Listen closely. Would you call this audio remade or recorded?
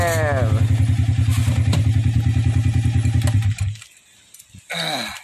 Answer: recorded